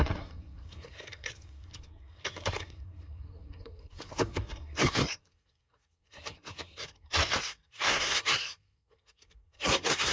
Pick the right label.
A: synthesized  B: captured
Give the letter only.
A